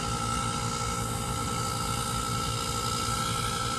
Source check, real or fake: real